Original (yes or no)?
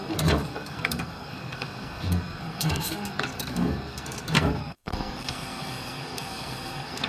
no